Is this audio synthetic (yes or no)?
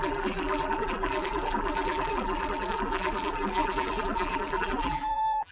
yes